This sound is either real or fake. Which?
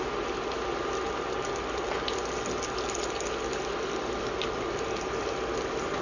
real